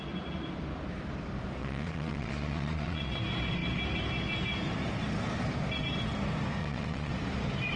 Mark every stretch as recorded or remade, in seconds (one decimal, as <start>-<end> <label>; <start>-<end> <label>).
0.0-1.6 recorded; 1.6-3.2 remade; 3.2-6.6 recorded; 6.6-7.1 remade; 7.1-7.8 recorded